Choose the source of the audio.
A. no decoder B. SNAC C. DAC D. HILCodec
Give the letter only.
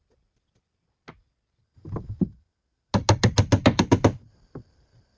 A